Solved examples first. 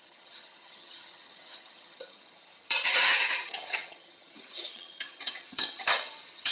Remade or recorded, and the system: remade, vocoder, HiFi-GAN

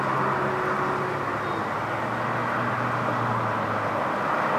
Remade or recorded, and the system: recorded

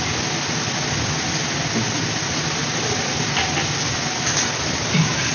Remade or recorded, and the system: recorded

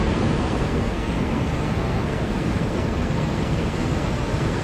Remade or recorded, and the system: remade, codec, SNAC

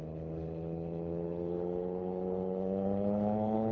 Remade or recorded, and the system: remade, codec, HILCodec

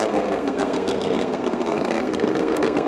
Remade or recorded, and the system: remade, codec, SNAC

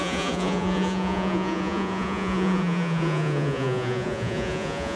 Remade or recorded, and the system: remade, vocoder, Vocos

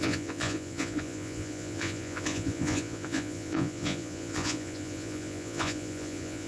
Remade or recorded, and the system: remade, vocoder, Vocos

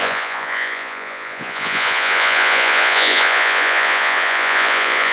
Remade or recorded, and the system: remade, vocoder, Vocos